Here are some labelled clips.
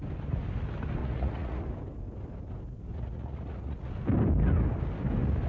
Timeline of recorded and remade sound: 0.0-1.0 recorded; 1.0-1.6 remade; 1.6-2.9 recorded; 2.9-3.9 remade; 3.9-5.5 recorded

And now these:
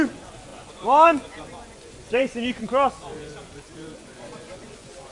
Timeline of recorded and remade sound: 0.0-5.1 remade